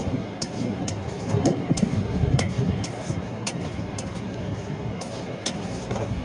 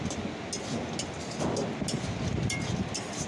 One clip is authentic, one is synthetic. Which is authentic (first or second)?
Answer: second